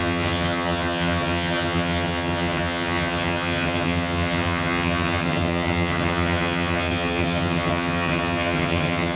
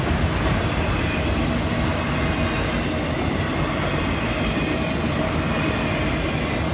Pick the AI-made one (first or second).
first